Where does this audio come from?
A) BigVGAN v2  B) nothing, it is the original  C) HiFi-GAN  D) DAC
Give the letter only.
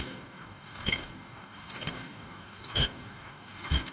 D